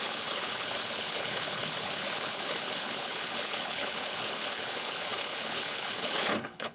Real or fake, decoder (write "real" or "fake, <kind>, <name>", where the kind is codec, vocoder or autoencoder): fake, codec, HILCodec